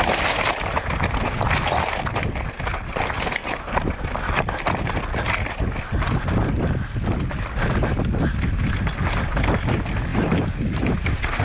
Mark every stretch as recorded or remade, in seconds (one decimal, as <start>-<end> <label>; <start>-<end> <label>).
0.0-3.4 recorded; 3.4-3.9 remade; 3.9-10.1 recorded; 10.1-11.4 remade